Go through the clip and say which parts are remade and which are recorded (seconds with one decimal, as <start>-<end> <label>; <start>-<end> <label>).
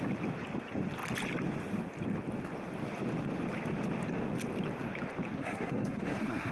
0.0-5.4 recorded; 5.4-6.5 remade